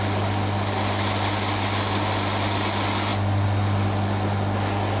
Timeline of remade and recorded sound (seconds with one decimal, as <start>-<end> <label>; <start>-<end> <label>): 0.0-5.0 recorded